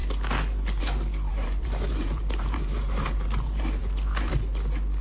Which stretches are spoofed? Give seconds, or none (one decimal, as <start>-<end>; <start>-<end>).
1.3-4.3